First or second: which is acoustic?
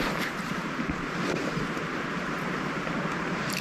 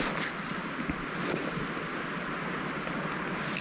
second